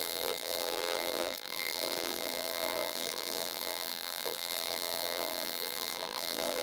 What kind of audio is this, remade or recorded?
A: remade